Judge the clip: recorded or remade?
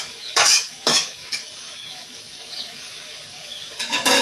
remade